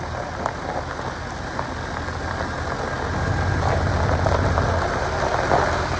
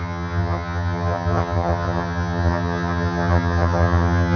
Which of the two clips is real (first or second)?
first